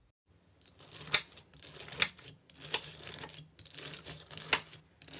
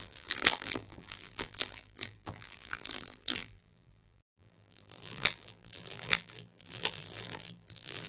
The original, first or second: first